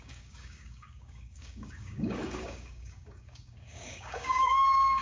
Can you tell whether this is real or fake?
fake